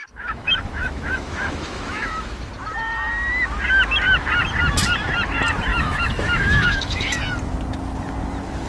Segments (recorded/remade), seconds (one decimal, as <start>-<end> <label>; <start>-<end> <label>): 0.0-2.5 remade; 2.5-5.7 recorded; 5.7-7.2 remade; 7.2-8.7 recorded